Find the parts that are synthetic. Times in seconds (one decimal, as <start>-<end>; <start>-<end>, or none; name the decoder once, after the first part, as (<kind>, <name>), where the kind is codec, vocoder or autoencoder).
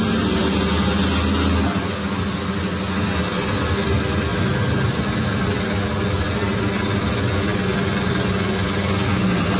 none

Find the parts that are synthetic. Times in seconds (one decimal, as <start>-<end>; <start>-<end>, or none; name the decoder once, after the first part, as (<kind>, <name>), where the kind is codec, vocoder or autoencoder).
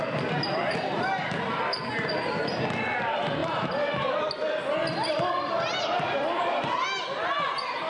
3.4-4.1 (vocoder, BigVGAN v2); 4.8-7.9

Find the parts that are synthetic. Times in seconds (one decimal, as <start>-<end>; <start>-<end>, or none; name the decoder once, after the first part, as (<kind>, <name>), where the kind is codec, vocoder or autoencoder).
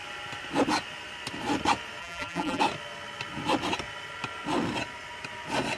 2.0-2.6 (vocoder, BigVGAN v2)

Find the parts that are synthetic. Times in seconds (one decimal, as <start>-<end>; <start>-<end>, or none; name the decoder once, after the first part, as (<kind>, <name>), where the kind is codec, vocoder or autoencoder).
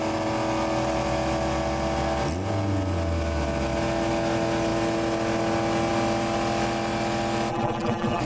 7.5-8.2 (vocoder, BigVGAN v2)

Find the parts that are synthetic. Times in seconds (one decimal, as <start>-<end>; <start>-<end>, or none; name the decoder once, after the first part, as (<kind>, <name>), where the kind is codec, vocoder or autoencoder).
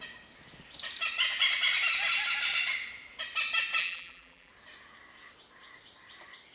3.8-4.5 (vocoder, BigVGAN v2)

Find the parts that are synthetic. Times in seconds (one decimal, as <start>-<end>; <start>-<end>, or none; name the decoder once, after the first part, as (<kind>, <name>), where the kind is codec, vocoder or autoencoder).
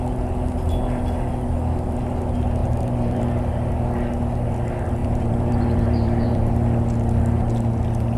2.6-3.2 (vocoder, BigVGAN v2); 5.0-6.5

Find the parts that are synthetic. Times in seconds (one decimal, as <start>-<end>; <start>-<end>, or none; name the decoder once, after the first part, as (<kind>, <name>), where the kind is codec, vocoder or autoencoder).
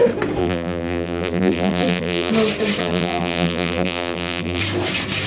0.4-2.3 (vocoder, BigVGAN v2); 2.8-4.6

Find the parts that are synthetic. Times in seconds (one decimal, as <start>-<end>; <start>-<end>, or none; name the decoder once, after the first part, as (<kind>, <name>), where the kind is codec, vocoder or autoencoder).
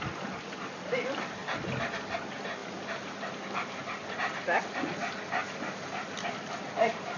none